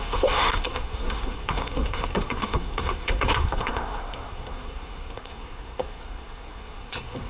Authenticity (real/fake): fake